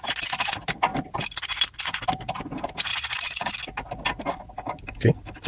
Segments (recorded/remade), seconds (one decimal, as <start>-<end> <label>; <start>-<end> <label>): 0.0-2.9 recorded; 2.9-3.5 remade; 3.5-5.5 recorded